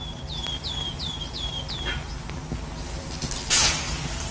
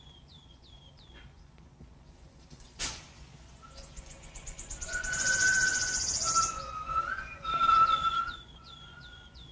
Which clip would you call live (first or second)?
first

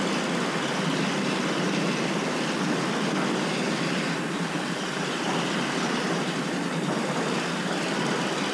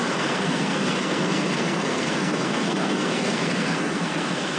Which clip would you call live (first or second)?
first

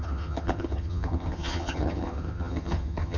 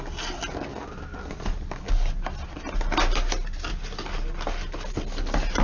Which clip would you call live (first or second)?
second